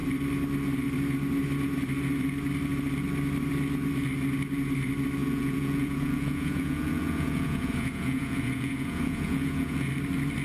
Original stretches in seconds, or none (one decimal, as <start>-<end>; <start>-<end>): 0.0-5.2; 9.9-10.4